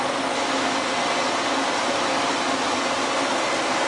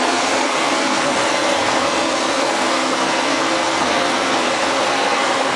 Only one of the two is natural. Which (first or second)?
first